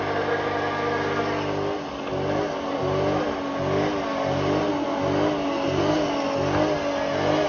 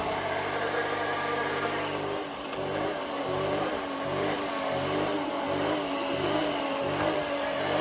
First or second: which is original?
first